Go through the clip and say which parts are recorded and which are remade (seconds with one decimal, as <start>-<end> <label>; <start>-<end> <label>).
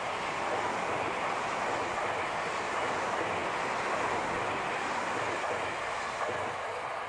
0.0-7.1 recorded